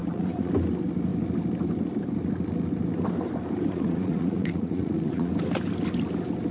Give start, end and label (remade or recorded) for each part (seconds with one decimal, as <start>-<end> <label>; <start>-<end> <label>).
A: 0.0-0.5 remade; 0.5-3.7 recorded; 3.7-5.3 remade; 5.3-6.5 recorded